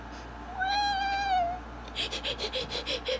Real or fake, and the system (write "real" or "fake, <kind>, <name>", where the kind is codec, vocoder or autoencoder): real